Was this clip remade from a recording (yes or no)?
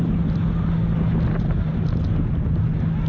no